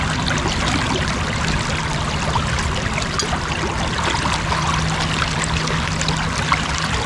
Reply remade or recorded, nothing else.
recorded